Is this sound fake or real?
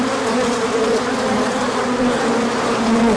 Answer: fake